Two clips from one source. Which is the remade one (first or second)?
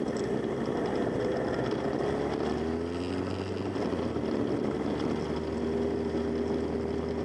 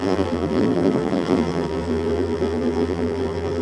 second